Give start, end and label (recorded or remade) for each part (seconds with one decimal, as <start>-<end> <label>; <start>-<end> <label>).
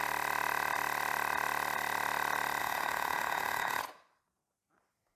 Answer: 0.0-2.6 recorded; 2.6-3.8 remade; 3.8-5.2 recorded